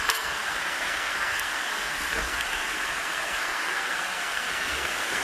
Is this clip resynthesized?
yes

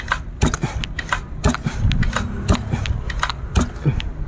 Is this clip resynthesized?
no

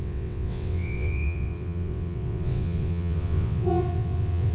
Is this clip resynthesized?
yes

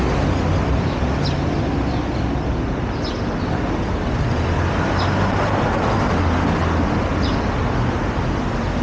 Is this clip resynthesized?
no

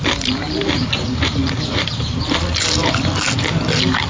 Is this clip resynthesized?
no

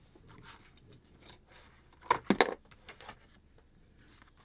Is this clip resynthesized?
no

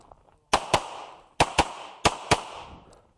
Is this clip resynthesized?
no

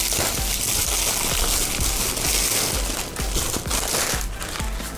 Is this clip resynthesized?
no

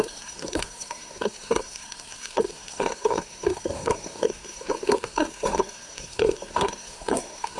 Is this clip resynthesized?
yes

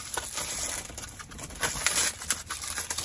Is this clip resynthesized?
no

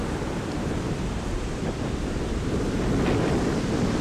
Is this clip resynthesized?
no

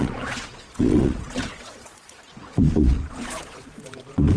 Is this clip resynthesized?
yes